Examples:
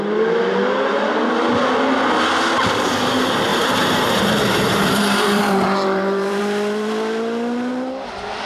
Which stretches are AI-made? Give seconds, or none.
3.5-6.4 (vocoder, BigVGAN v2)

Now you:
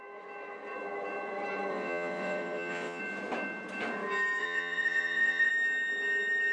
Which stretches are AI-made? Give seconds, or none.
1.7-3.0 (vocoder, WaveNeXt); 4.4-5.5

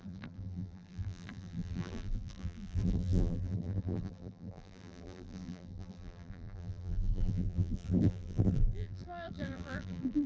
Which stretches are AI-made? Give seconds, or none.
0.0-10.3 (vocoder, BigVGAN v2)